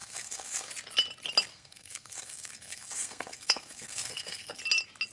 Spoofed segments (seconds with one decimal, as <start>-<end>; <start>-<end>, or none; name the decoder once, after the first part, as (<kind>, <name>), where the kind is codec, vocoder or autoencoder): 0.0-0.7 (codec, SNAC); 1.5-4.6